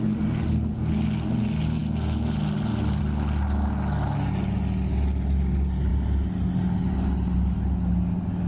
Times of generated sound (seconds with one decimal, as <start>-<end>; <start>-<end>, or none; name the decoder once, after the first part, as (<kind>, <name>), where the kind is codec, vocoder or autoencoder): none